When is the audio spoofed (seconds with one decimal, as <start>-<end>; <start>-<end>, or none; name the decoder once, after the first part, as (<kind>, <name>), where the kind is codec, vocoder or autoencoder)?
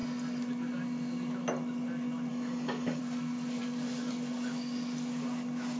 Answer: 2.3-3.0 (codec, DAC)